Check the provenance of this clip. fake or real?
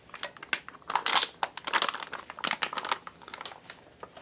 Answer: real